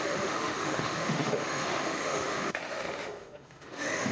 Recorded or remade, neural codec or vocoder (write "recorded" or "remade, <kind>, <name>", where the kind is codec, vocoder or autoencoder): remade, autoencoder, DAC-VAE